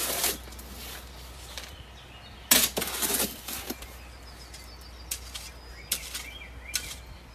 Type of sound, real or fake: real